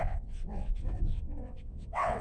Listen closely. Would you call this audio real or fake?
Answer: fake